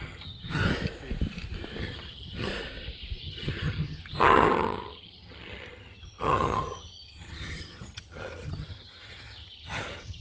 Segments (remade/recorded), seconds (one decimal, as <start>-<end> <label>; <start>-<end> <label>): 0.0-0.6 remade; 0.6-1.8 recorded; 1.8-2.5 remade; 2.5-3.2 recorded; 3.2-10.2 remade